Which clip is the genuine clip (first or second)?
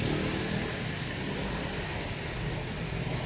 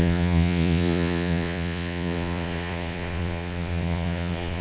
first